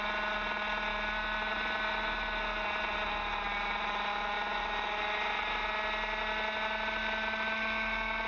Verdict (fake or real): real